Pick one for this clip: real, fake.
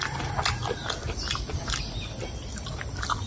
real